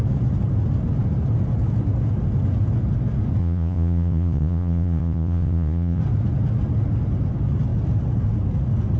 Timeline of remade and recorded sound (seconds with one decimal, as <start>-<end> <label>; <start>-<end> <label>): 0.0-3.4 recorded; 3.4-6.0 remade; 6.0-9.0 recorded